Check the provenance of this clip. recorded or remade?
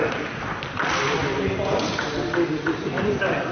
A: recorded